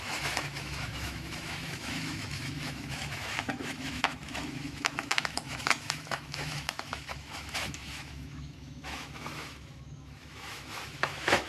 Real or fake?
fake